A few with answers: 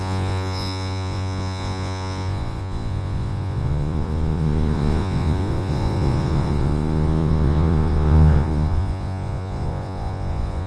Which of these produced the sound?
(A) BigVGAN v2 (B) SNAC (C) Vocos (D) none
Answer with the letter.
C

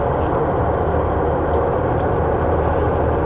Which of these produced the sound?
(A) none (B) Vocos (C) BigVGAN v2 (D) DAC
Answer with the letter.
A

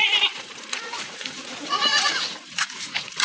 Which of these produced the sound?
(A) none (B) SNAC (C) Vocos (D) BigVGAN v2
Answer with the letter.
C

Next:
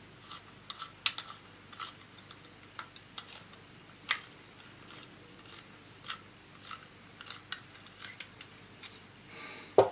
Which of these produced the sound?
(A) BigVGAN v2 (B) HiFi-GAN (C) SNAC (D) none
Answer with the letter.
D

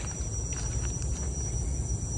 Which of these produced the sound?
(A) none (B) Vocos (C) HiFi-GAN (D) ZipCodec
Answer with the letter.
A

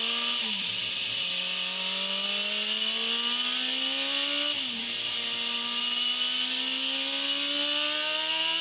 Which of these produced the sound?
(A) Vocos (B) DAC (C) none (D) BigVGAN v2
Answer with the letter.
C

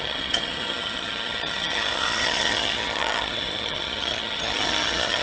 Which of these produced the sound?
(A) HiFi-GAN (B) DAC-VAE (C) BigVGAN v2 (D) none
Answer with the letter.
A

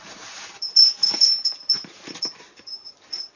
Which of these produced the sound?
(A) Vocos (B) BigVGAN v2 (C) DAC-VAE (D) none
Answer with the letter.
B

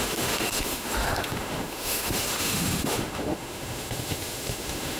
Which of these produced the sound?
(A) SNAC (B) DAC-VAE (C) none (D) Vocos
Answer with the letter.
B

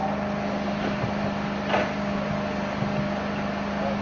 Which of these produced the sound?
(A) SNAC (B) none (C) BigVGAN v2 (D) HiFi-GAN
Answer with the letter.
B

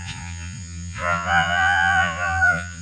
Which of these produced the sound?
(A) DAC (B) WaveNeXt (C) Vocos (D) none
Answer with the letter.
C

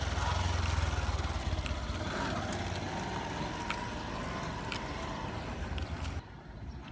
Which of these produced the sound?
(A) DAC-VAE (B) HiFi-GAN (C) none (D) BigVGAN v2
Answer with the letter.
C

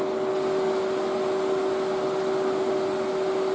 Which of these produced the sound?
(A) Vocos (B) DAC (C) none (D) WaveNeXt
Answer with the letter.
C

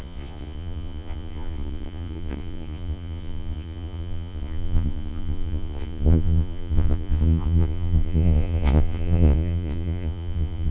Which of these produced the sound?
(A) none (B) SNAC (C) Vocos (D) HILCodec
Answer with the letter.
C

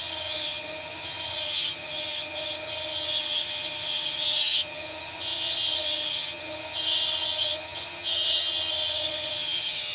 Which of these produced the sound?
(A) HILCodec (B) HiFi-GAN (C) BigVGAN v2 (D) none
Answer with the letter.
B